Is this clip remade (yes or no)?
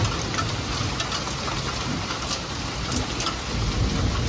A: no